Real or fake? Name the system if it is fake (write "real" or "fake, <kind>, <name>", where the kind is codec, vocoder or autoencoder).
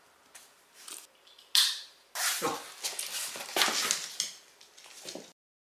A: real